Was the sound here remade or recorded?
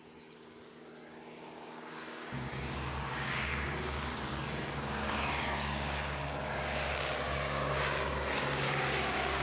remade